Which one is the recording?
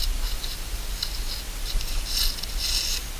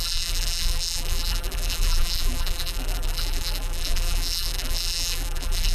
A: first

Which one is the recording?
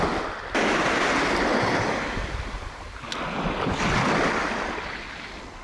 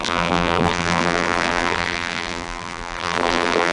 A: first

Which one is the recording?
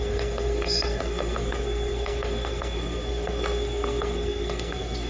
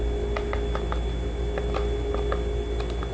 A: second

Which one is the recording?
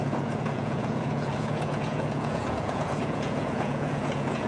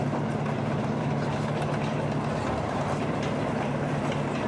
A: second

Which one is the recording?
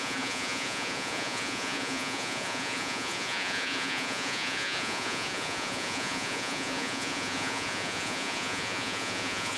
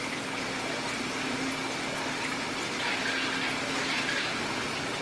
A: second